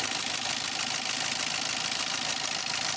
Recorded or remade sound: remade